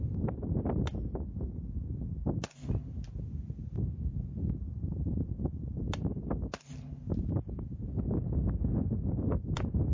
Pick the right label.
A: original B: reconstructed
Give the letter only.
A